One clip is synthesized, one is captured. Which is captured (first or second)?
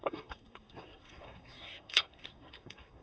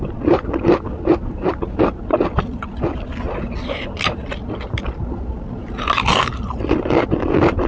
second